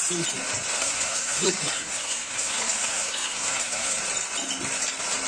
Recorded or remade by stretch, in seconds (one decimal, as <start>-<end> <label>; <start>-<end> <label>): 0.0-0.8 recorded; 0.8-4.0 remade; 4.0-5.3 recorded